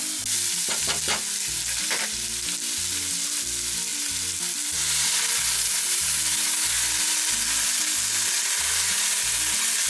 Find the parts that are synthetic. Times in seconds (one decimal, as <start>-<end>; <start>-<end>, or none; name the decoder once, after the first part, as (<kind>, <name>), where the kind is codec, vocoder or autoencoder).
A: none